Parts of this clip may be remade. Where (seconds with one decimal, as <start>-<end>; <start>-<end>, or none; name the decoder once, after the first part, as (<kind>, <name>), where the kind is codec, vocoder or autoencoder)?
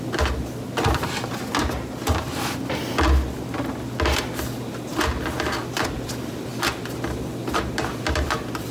0.0-1.5 (vocoder, BigVGAN v2); 5.6-6.5; 7.9-8.7